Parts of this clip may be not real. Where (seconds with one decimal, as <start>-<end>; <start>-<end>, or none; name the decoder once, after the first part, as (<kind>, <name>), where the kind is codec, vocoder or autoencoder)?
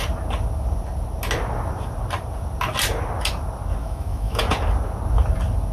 3.8-4.4 (autoencoder, DAC-VAE)